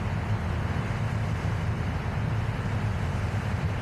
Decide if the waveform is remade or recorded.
recorded